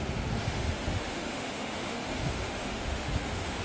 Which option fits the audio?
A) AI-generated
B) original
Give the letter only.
A